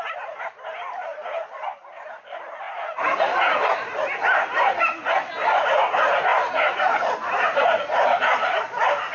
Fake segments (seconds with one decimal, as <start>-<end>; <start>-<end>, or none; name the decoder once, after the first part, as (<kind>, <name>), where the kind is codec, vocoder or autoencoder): none